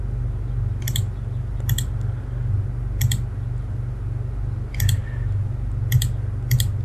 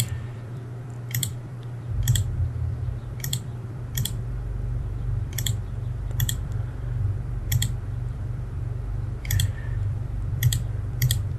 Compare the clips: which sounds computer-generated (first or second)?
second